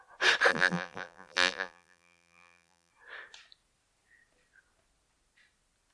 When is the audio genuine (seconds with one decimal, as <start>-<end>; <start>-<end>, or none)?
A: 0.0-0.5; 2.9-5.9